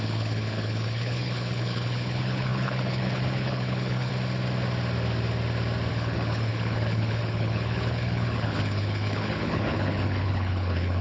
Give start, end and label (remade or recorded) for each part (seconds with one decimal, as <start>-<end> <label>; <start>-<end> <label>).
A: 0.0-4.1 remade; 4.1-5.9 recorded; 5.9-11.0 remade